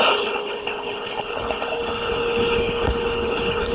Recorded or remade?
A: remade